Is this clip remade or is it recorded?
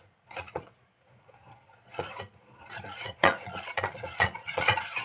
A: remade